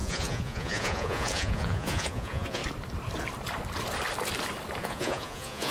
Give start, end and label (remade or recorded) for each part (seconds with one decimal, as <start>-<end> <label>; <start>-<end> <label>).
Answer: 0.0-2.6 remade; 2.6-4.8 recorded; 4.8-5.7 remade